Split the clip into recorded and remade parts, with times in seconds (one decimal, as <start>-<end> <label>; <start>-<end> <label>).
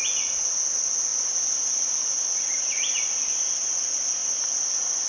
0.0-5.1 recorded